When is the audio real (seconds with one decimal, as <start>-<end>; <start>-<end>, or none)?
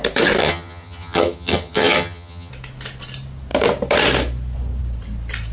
0.0-0.4; 2.5-5.5